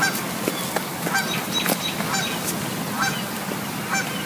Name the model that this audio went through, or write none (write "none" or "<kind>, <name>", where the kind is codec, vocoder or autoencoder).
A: none